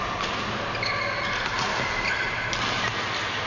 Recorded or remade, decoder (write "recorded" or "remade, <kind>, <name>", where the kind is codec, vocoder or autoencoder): recorded